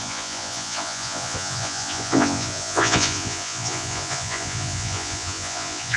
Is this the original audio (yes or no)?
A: no